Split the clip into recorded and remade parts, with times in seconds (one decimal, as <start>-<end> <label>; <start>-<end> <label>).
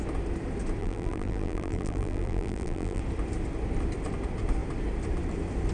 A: 0.0-0.8 recorded; 0.8-3.0 remade; 3.0-5.7 recorded